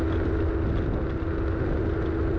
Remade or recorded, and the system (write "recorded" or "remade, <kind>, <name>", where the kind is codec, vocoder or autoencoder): recorded